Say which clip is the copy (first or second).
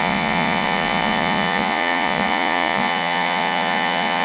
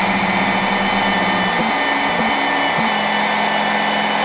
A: first